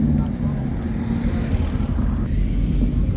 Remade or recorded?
recorded